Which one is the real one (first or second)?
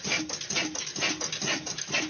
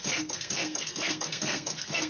first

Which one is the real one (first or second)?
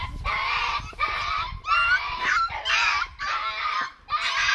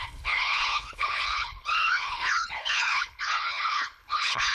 first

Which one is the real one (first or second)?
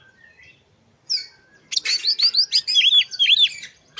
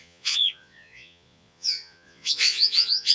first